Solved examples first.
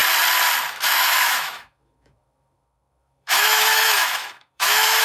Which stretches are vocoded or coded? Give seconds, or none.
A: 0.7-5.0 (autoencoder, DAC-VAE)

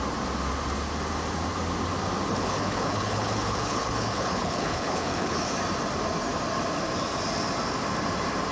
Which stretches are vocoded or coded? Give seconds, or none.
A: 2.3-5.4 (codec, HILCodec)